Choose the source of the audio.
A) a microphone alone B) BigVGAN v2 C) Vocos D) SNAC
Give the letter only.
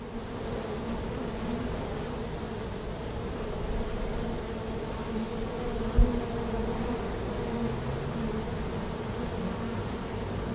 A